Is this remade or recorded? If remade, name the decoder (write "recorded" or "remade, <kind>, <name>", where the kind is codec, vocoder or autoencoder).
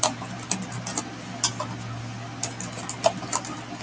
recorded